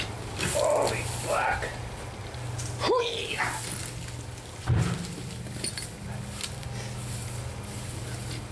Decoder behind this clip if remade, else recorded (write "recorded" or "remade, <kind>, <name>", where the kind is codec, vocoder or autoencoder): recorded